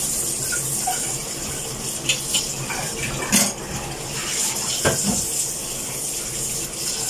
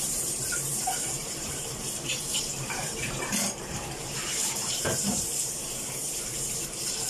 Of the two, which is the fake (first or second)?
second